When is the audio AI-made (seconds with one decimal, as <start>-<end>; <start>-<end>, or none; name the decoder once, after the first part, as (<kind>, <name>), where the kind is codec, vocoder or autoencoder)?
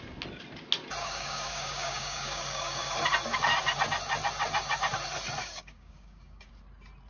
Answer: 1.0-2.9 (codec, DAC); 5.4-6.5